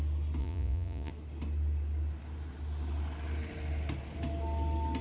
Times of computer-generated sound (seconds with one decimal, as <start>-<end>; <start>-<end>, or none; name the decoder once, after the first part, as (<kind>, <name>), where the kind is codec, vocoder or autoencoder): 0.4-1.1 (vocoder, Vocos)